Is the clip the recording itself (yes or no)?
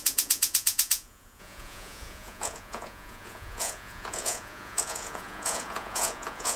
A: no